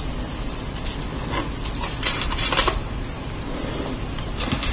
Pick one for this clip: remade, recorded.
recorded